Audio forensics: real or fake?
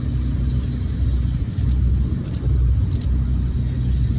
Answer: real